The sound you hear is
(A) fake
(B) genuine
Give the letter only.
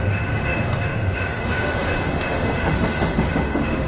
A